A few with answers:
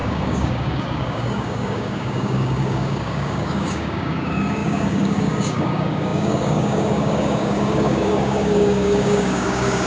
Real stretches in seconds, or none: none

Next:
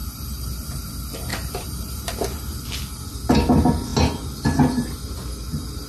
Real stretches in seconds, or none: 0.9-1.3; 2.1-5.9

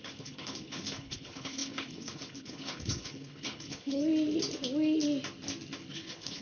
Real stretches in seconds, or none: 4.0-5.9

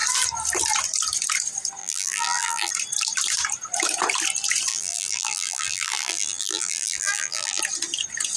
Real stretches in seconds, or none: 0.0-1.8; 2.7-4.7; 7.6-8.4

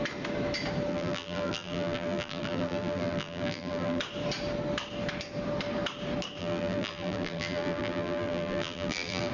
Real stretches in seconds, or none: 0.0-0.9; 4.0-6.4

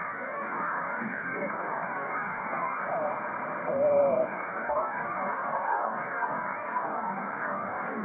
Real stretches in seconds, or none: 2.8-4.2